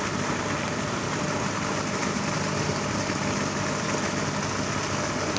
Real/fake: real